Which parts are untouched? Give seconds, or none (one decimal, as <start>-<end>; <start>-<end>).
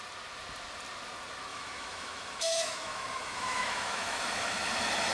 0.0-1.5; 4.6-5.1